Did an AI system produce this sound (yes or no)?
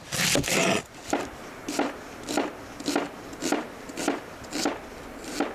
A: no